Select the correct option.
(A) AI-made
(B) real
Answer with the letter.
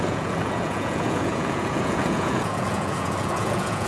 A